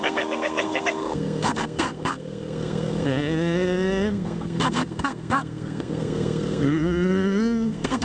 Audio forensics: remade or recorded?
remade